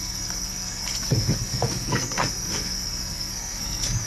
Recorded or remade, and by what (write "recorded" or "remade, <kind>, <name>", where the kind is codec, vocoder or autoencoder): remade, codec, SNAC